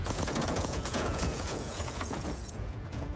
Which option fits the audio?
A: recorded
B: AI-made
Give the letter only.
B